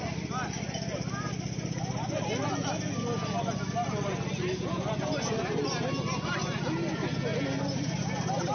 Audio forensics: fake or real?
real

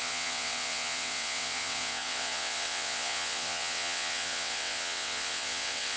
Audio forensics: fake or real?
fake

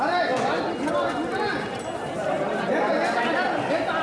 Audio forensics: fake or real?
real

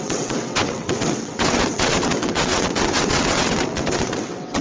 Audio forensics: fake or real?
fake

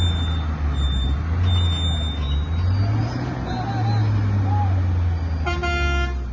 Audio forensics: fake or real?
real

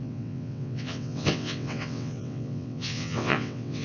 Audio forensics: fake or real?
fake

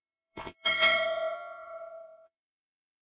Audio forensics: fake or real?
fake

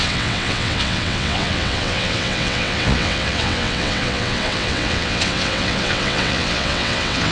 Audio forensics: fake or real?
fake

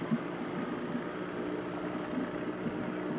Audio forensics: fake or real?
real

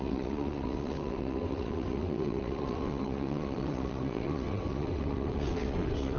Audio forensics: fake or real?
fake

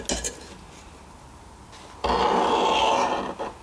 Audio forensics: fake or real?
real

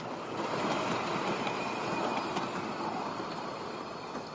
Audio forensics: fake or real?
real